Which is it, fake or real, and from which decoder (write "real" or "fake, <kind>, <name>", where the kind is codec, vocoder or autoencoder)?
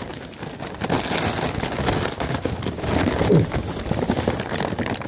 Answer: real